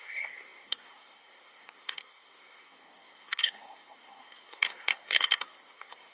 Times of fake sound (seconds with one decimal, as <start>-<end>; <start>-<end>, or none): 0.0-6.1